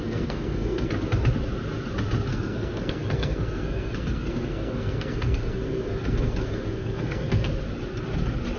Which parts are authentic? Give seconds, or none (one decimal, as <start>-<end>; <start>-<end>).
0.9-2.3; 7.5-8.6